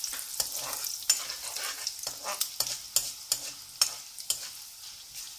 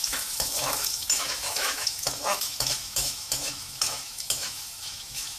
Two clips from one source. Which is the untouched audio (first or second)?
first